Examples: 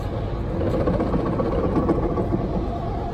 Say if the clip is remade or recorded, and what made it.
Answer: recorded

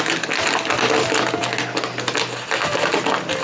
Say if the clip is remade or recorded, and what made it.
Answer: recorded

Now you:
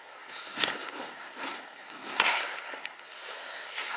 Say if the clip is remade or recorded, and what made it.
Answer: remade, codec, SNAC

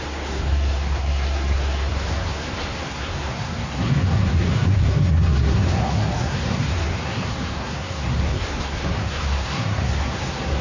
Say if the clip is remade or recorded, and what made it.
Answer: remade, codec, SNAC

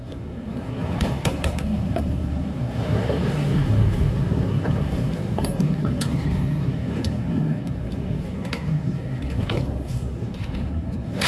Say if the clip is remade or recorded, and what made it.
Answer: remade, codec, SNAC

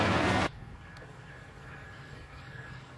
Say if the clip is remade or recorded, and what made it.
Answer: remade, codec, SNAC